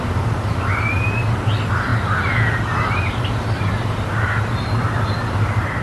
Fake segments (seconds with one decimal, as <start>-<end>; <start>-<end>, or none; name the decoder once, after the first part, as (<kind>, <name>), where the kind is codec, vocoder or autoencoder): none